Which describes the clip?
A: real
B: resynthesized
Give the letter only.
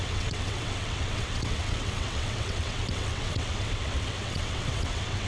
B